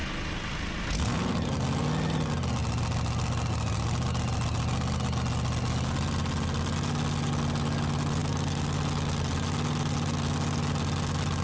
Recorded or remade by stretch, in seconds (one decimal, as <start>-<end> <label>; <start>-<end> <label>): 0.0-11.4 recorded